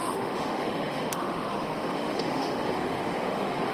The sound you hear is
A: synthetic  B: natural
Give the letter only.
A